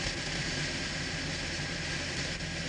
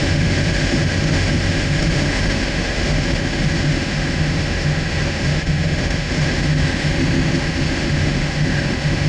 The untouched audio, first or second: first